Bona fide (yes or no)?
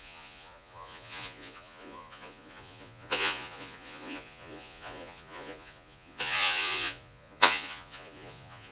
no